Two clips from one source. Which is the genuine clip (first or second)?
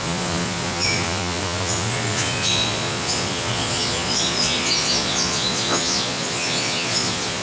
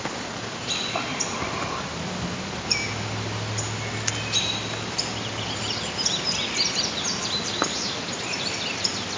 second